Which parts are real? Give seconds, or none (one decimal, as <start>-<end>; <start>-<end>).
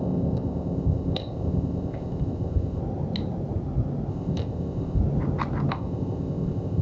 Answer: 2.8-4.1; 5.0-5.7